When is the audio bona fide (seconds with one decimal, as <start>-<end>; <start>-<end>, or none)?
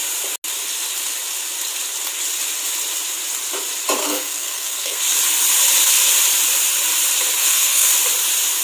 0.0-4.0; 5.0-7.4; 7.9-8.6